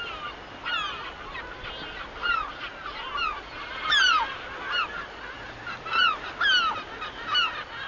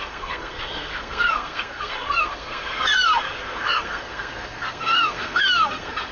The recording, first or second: first